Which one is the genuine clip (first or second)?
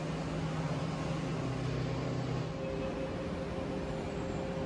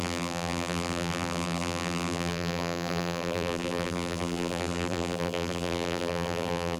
first